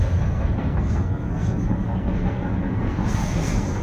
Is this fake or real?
fake